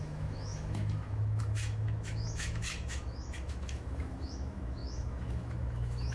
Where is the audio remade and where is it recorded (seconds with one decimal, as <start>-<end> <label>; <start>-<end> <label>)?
0.0-6.1 remade